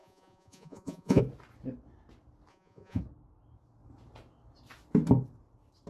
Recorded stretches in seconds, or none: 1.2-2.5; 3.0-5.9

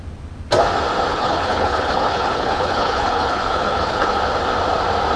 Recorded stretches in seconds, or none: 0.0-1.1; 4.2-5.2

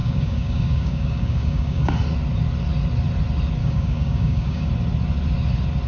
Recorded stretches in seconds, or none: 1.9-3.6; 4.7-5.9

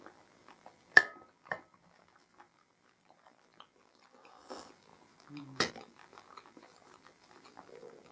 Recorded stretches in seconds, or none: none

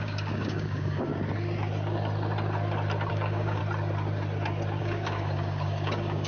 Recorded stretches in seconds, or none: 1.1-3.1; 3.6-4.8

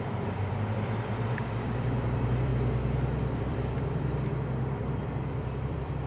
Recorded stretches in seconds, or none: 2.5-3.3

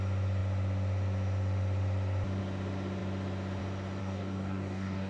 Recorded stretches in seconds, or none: 0.0-4.0

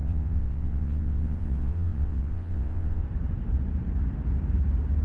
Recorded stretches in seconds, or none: 3.0-5.0